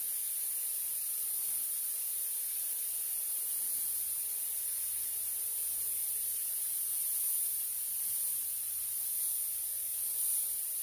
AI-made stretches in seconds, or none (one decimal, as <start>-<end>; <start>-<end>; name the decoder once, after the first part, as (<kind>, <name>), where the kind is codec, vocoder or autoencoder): none